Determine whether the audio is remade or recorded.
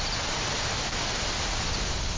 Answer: recorded